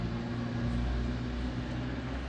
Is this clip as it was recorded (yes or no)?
yes